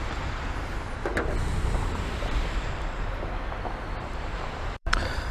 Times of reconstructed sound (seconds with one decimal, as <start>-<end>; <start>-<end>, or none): 1.5-3.3; 4.1-5.3